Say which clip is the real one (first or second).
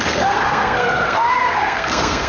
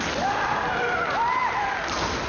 second